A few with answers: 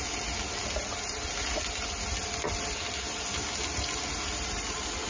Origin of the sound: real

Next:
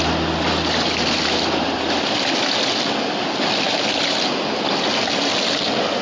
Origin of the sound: real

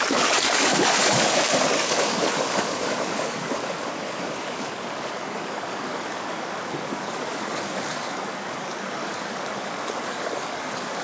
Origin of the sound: fake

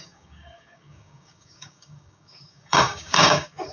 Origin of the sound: fake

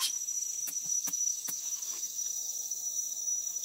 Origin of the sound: fake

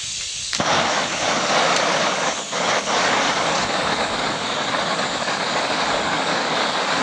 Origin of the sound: fake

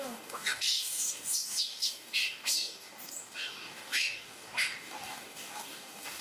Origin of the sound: fake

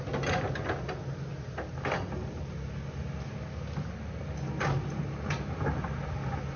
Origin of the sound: real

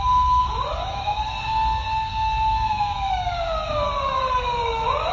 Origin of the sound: fake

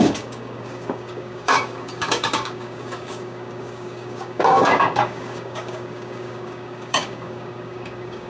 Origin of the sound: fake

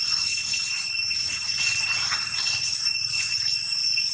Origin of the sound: real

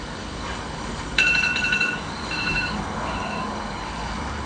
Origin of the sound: fake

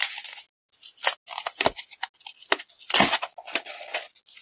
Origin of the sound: real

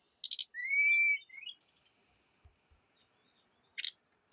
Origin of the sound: real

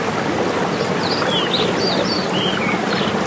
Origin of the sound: real